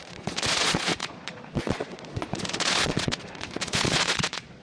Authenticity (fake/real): fake